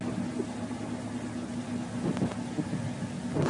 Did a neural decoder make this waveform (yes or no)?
no